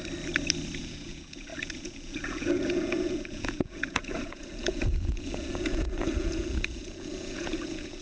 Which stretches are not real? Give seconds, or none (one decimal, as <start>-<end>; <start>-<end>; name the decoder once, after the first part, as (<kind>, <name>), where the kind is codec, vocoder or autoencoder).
0.8-8.0 (vocoder, Vocos)